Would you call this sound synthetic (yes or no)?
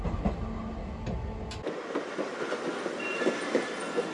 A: no